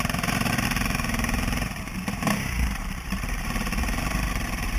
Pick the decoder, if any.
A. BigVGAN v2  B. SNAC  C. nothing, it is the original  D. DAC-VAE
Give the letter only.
A